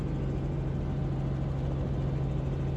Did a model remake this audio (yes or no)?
no